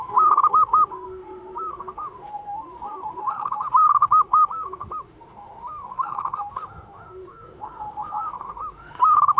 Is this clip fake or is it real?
fake